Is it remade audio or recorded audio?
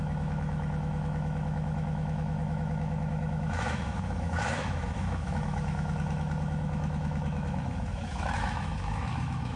remade